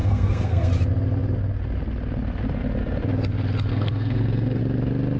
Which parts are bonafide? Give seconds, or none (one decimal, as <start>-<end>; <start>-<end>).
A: 0.7-3.7; 4.6-5.2